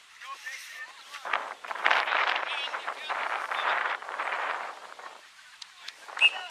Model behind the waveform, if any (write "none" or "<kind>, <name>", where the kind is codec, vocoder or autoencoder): vocoder, BigVGAN v2